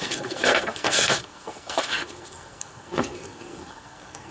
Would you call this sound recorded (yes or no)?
no